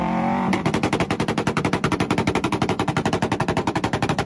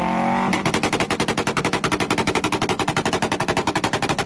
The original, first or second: second